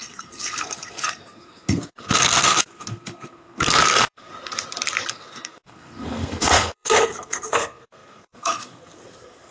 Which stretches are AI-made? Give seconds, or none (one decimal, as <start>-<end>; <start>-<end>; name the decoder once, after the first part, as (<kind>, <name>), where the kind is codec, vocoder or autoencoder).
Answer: 0.0-4.3 (codec, SNAC); 5.1-9.5